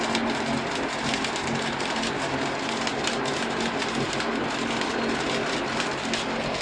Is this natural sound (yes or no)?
yes